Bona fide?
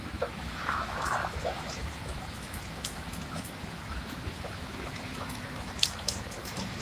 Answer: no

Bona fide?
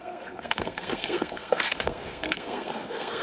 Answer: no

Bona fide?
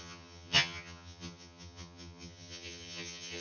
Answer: no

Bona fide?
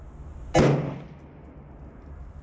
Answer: yes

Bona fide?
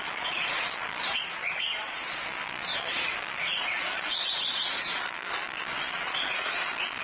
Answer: no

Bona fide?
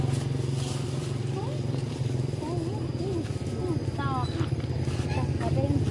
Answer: yes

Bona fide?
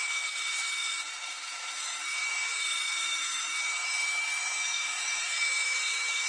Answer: no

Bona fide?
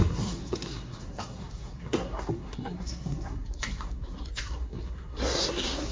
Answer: no